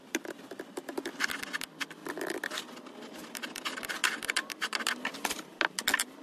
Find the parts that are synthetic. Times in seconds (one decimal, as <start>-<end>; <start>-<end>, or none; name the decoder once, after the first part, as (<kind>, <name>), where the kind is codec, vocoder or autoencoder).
none

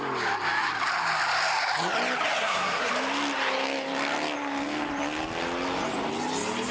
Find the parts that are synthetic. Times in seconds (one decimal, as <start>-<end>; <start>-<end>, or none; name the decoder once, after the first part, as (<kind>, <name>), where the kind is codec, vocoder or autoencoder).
2.4-2.9 (codec, SNAC)

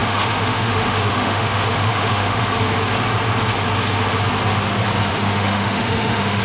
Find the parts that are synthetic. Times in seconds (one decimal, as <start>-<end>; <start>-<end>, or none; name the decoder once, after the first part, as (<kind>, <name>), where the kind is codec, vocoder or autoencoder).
0.0-2.4 (autoencoder, DAC-VAE); 5.1-6.4

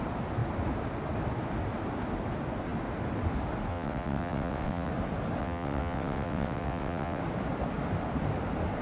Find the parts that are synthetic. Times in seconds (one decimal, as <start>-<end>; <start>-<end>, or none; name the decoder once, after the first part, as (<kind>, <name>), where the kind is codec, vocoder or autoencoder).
3.7-4.9 (vocoder, WaveNeXt); 5.4-7.2

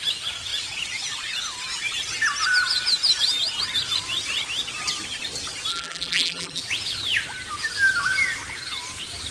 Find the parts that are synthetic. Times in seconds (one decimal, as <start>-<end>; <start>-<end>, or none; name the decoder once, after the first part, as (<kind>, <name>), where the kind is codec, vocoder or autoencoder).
5.7-6.6 (vocoder, BigVGAN v2)

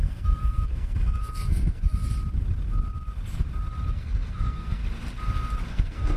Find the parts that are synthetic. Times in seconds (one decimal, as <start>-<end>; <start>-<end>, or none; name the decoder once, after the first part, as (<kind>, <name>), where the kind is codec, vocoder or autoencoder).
0.0-2.0 (codec, SNAC); 3.9-4.8; 5.7-6.2

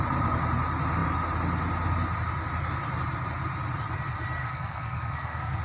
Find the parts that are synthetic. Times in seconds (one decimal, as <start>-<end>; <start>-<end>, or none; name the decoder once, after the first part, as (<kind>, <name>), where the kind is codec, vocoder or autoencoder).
4.4-5.6 (codec, SNAC)